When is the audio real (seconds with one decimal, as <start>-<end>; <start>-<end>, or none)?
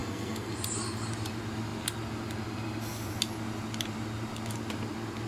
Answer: 0.5-5.3